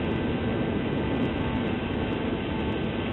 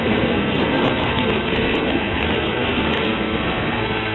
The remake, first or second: second